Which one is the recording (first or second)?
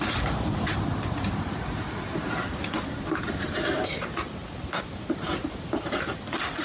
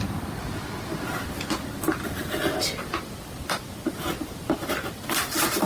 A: second